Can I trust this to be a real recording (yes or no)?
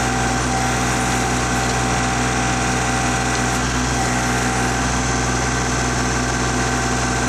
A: yes